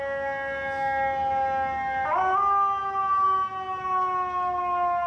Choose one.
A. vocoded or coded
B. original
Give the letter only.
B